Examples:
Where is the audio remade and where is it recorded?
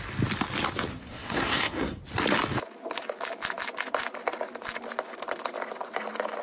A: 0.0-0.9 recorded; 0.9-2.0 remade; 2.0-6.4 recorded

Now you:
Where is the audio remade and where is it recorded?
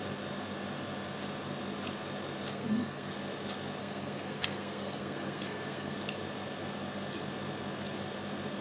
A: 0.0-2.5 recorded; 2.5-3.1 remade; 3.1-3.8 recorded; 3.8-5.9 remade; 5.9-8.6 recorded